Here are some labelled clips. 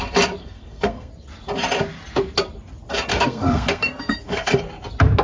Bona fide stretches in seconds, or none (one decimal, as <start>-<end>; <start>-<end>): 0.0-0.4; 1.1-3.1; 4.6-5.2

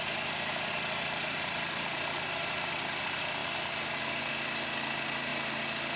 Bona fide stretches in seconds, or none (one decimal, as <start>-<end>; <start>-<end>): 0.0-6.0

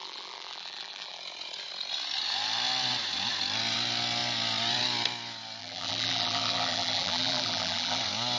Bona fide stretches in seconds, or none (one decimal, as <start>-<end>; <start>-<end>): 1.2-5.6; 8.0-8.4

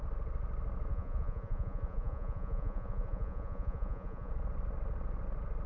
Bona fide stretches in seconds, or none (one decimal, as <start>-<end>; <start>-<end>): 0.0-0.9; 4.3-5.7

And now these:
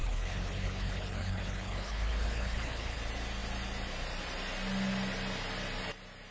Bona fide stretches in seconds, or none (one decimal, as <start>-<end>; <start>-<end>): 3.0-6.3

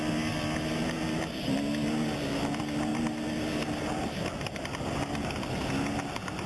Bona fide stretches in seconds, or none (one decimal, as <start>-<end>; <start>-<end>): 0.0-6.5

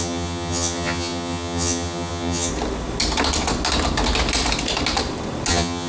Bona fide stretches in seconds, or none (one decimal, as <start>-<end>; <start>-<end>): 2.5-5.5